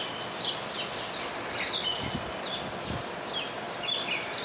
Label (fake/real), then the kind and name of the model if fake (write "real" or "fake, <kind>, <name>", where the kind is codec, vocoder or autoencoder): real